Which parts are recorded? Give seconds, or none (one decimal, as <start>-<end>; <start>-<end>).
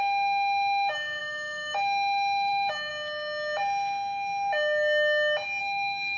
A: 2.9-5.6